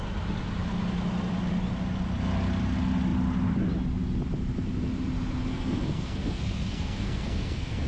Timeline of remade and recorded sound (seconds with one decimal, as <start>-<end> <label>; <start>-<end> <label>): 0.0-5.5 recorded; 5.5-7.9 remade